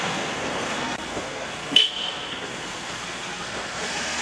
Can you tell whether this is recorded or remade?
remade